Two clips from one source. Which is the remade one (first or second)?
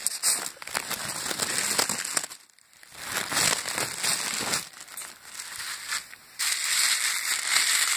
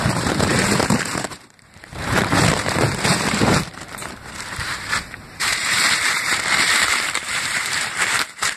second